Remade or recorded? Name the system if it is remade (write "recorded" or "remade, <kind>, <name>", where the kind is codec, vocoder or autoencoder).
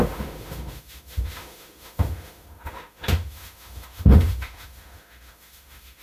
remade, autoencoder, DAC-VAE